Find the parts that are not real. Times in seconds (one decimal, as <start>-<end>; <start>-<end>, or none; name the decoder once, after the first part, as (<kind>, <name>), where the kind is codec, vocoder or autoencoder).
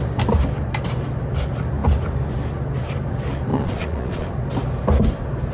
3.5-4.3 (vocoder, Vocos)